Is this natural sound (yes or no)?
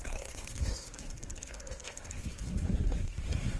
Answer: no